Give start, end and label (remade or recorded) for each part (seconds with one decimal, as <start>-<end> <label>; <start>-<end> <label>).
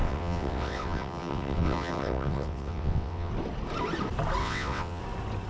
0.0-3.3 remade; 3.3-4.4 recorded; 4.4-5.0 remade; 5.0-5.5 recorded